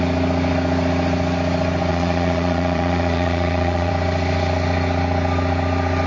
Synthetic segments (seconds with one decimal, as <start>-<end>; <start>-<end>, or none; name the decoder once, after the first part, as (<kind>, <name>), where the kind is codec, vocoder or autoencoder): 1.9-3.9 (vocoder, Vocos)